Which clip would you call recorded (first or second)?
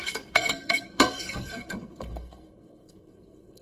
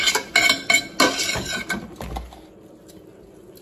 second